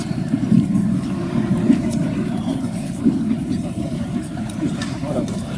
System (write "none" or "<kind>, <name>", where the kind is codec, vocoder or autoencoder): vocoder, BigVGAN v2